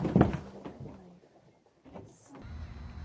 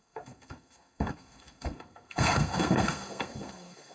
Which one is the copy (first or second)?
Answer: second